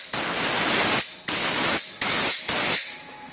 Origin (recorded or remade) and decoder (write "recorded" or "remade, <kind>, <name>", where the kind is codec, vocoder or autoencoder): recorded